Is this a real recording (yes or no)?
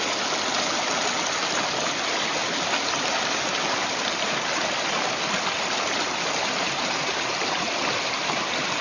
yes